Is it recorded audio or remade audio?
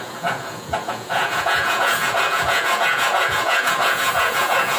remade